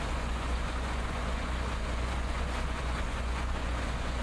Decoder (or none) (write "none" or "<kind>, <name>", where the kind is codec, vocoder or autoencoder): vocoder, Vocos